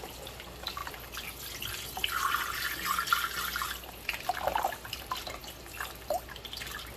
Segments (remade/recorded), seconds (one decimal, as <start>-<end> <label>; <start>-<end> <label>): 0.0-7.0 recorded